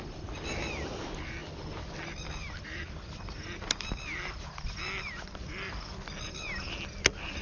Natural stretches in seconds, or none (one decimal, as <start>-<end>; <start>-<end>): 0.0-7.4